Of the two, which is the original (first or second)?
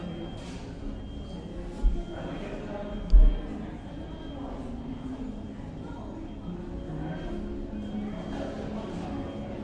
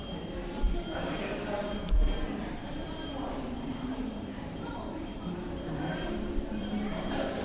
first